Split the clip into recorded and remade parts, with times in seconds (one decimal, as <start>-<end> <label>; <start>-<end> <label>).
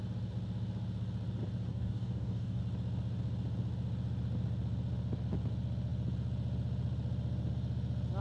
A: 0.0-1.7 recorded; 1.7-2.6 remade; 2.6-8.2 recorded